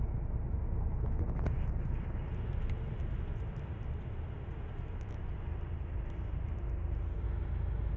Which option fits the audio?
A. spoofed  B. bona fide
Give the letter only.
B